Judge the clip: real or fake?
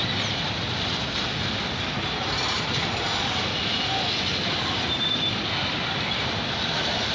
real